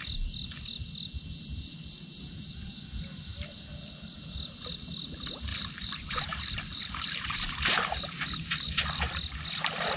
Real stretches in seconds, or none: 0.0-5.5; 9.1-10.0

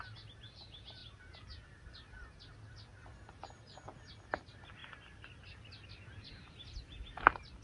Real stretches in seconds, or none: 0.0-7.6